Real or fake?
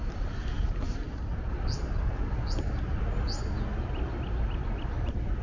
real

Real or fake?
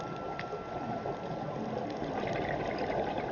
real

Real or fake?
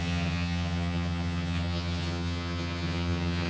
fake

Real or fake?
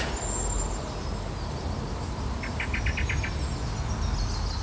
real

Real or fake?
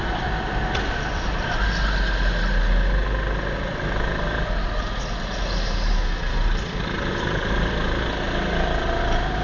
real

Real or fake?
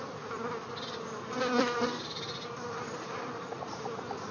real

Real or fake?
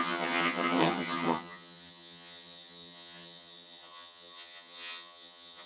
fake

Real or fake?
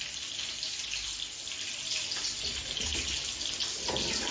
real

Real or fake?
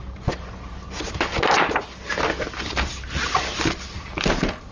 real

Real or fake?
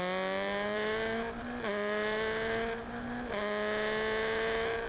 real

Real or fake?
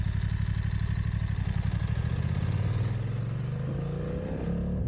real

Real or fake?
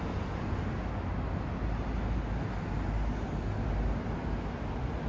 real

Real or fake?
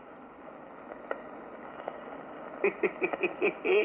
real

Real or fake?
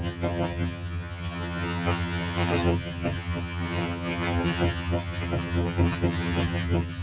fake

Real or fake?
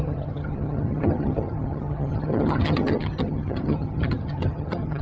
fake